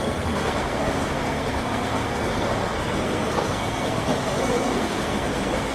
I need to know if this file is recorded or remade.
remade